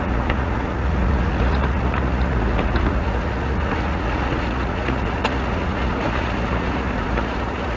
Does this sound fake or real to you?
fake